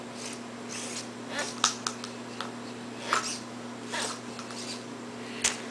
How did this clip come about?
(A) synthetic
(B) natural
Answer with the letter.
B